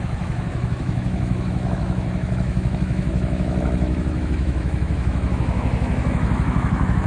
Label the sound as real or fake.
fake